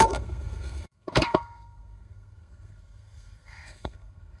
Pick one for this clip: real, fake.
fake